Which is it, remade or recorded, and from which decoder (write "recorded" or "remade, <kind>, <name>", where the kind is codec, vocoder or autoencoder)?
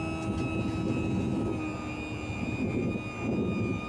recorded